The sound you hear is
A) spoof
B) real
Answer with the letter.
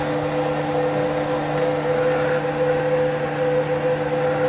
B